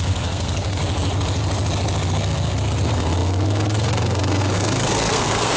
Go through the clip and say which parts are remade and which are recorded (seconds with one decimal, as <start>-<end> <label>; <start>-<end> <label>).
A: 0.0-0.8 remade; 0.8-2.1 recorded; 2.1-5.6 remade